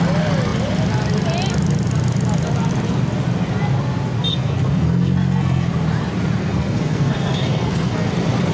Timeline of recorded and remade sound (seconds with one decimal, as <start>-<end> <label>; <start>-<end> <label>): 0.0-4.3 recorded; 4.3-5.7 remade; 5.7-6.4 recorded; 6.4-8.1 remade; 8.1-8.5 recorded